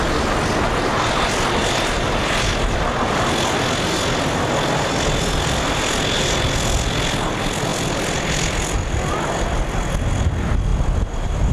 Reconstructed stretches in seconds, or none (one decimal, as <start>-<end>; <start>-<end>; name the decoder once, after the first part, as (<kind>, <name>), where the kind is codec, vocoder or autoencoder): 1.6-2.5 (vocoder, BigVGAN v2); 7.7-9.1; 10.7-11.5